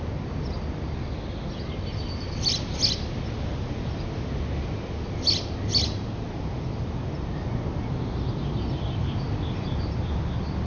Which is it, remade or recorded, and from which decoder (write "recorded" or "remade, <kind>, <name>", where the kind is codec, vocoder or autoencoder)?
recorded